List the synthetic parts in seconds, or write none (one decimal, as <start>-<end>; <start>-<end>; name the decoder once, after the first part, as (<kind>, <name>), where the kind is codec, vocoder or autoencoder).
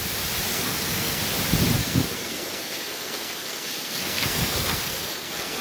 0.5-1.2 (codec, SNAC); 1.8-5.6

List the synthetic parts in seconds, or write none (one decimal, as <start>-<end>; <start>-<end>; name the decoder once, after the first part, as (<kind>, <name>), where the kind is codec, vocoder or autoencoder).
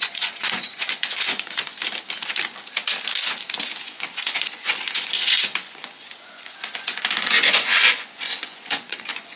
0.0-1.7 (vocoder, Vocos); 3.8-9.4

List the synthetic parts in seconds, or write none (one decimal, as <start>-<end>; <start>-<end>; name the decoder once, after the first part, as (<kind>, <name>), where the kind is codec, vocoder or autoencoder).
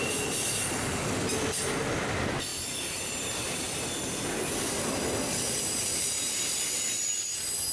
none